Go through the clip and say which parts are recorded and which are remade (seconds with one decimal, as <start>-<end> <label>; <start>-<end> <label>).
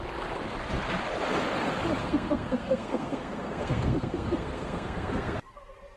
0.0-2.0 recorded; 2.0-5.6 remade; 5.6-6.0 recorded